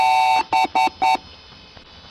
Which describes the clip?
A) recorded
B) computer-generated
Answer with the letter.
A